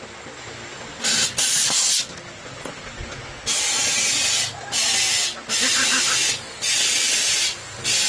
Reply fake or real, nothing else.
real